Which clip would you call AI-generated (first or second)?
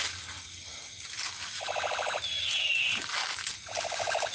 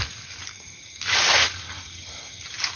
second